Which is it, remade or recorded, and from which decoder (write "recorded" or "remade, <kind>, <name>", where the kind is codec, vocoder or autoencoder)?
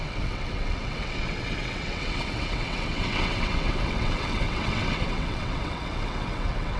remade, vocoder, WaveNeXt